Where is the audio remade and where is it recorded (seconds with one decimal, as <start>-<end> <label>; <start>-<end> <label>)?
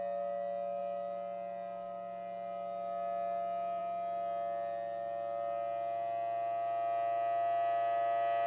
0.0-8.5 recorded